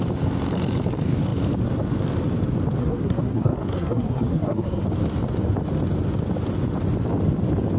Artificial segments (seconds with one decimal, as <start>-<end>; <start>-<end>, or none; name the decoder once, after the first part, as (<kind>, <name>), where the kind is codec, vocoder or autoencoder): 2.8-4.8 (codec, SNAC)